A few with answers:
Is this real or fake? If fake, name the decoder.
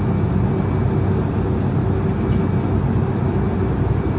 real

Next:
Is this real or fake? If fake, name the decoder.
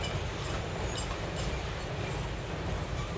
fake, vocoder, BigVGAN v2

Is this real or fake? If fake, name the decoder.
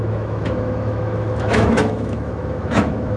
fake, autoencoder, DAC-VAE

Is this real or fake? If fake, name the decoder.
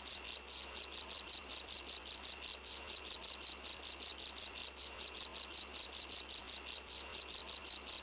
real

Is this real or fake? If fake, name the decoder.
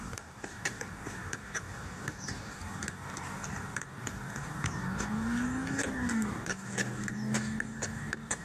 fake, codec, DAC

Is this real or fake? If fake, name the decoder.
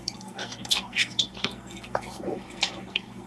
fake, codec, SNAC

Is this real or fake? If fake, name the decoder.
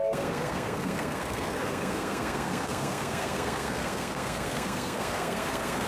fake, codec, SNAC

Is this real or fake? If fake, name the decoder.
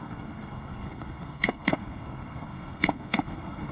fake, codec, SNAC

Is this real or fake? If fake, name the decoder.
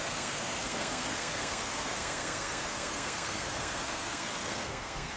fake, codec, SNAC